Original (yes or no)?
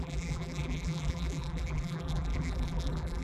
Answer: no